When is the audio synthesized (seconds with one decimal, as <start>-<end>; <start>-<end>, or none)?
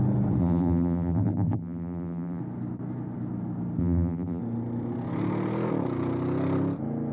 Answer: 0.4-2.4; 3.8-4.4